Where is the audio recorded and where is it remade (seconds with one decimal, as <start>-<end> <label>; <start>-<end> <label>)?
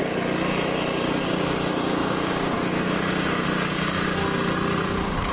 0.0-1.2 recorded; 1.2-4.2 remade; 4.2-4.8 recorded; 4.8-5.3 remade